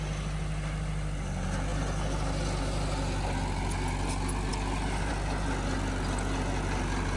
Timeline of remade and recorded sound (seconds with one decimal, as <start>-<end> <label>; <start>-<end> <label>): 0.0-7.2 recorded